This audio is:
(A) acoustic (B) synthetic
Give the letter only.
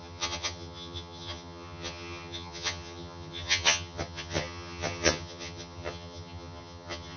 B